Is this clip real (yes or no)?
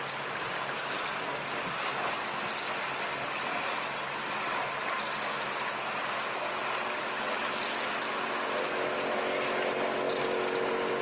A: yes